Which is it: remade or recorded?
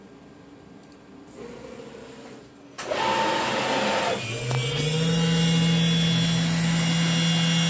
recorded